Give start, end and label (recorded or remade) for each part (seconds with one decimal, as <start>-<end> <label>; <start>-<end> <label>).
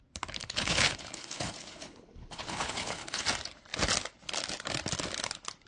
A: 0.0-0.4 recorded; 0.4-3.2 remade; 3.2-5.7 recorded